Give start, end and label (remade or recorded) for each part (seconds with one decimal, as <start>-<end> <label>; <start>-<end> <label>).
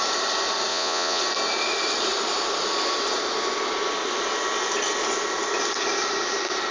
0.0-0.7 recorded; 0.7-1.2 remade; 1.2-6.7 recorded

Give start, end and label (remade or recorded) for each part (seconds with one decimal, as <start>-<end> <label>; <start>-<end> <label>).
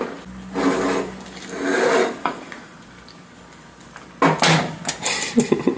0.0-2.2 recorded; 2.2-2.9 remade; 2.9-5.8 recorded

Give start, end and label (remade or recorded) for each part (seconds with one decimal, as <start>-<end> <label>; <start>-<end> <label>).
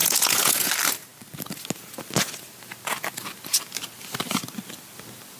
0.0-0.7 remade; 0.7-5.4 recorded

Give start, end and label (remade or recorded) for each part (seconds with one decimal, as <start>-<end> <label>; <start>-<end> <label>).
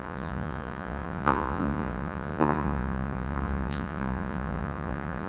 0.0-5.3 remade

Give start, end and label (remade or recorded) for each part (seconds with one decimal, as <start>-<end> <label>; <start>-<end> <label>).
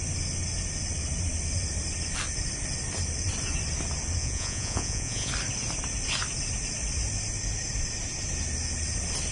0.0-4.2 recorded; 4.2-5.3 remade; 5.3-9.3 recorded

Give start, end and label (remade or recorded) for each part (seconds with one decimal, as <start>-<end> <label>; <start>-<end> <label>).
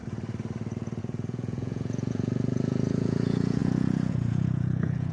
0.0-1.0 recorded; 1.0-5.1 remade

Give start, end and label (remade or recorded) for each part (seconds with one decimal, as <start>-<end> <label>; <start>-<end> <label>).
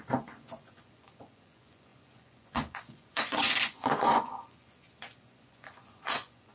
0.0-6.5 remade